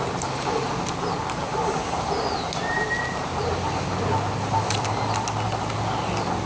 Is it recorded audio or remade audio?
recorded